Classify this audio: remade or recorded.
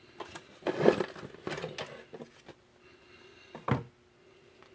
recorded